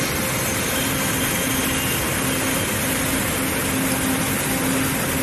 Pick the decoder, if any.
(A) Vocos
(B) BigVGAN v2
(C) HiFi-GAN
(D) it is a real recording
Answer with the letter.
D